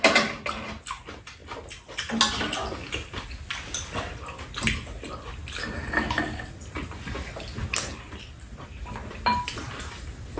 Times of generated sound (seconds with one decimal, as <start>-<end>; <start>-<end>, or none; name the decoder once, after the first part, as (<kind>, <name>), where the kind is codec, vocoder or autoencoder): none